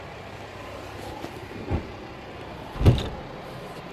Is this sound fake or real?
real